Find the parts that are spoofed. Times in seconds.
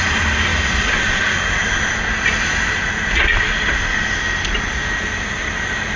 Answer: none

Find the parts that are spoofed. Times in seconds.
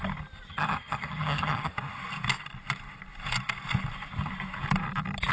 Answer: 0.5-1.7 (vocoder, HiFi-GAN)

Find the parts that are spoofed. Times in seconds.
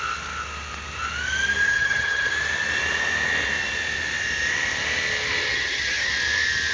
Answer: 1.7-2.3 (vocoder, HiFi-GAN); 5.5-6.1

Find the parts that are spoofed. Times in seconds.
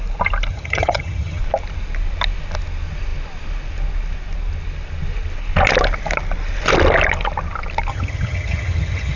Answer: 0.5-1.4 (vocoder, HiFi-GAN); 7.9-9.2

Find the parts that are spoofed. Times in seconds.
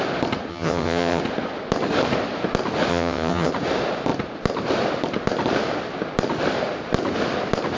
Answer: 0.5-1.2 (vocoder, HiFi-GAN); 2.9-3.5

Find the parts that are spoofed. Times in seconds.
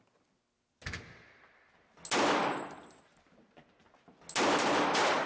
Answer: none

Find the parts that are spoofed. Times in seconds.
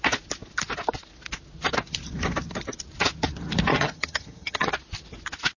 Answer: 3.7-4.7 (vocoder, HiFi-GAN)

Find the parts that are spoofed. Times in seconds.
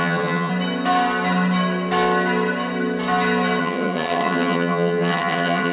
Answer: 0.0-0.5 (vocoder, HiFi-GAN); 3.6-5.7